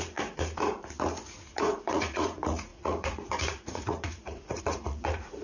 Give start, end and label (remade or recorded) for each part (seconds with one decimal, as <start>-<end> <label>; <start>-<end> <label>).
0.0-5.4 remade